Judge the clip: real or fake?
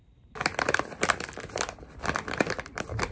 fake